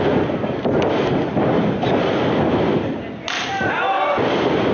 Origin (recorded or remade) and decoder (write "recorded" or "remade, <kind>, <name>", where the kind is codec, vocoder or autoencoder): recorded